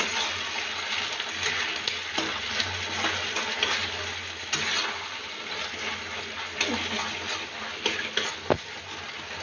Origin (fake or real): real